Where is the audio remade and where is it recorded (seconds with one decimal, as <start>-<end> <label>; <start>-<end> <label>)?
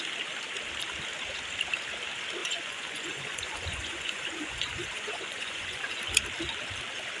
0.0-2.4 recorded; 2.4-6.0 remade; 6.0-7.2 recorded